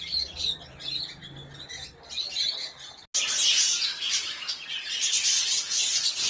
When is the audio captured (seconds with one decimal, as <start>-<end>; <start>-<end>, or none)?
0.0-3.9